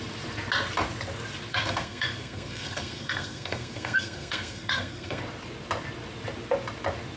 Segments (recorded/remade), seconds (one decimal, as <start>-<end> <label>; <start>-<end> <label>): 0.0-1.5 recorded; 1.5-5.2 remade; 5.2-7.2 recorded